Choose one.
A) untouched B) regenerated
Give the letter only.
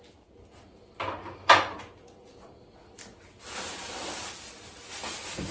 A